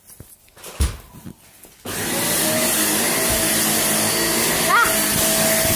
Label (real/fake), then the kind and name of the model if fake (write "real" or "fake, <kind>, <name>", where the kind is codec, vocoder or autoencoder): real